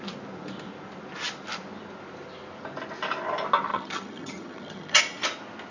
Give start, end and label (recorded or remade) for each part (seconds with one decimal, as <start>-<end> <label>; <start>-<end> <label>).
0.0-3.7 recorded; 3.7-5.0 remade; 5.0-5.7 recorded